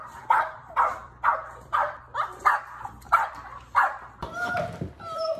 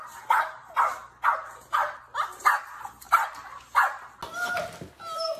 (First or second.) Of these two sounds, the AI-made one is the first